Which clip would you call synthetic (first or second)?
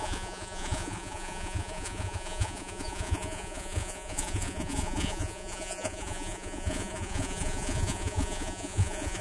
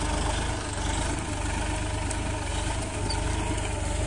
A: first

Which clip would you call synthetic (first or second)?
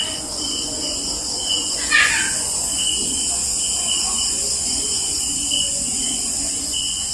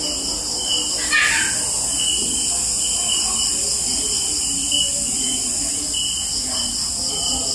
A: first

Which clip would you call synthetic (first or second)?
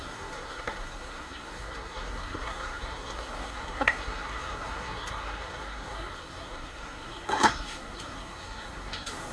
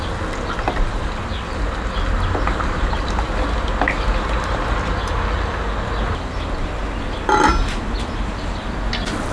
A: first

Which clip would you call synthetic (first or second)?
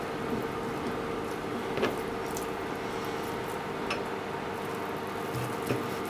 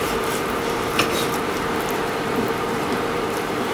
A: second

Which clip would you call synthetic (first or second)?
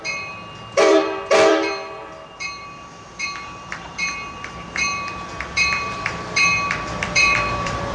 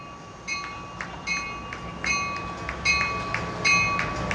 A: first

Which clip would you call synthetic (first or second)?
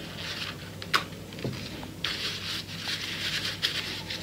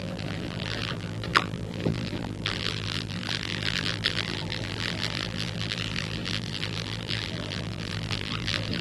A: second